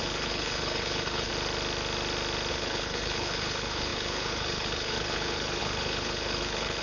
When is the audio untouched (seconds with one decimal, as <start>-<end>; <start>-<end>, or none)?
1.3-2.5